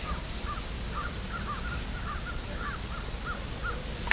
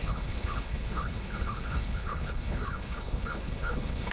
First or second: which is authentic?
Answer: first